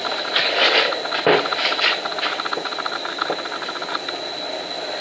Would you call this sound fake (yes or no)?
no